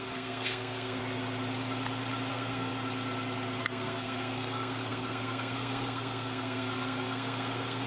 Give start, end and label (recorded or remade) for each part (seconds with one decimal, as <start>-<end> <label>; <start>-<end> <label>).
0.0-1.0 remade; 1.0-2.3 recorded; 2.3-2.7 remade; 2.7-3.6 recorded; 3.6-7.9 remade